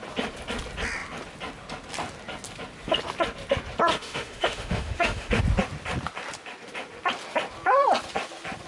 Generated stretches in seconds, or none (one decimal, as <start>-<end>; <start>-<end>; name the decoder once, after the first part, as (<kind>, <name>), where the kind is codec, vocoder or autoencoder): 3.9-5.4 (autoencoder, DAC-VAE)